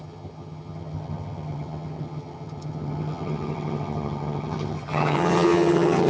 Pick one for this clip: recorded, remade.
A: remade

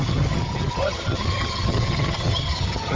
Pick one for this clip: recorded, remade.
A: remade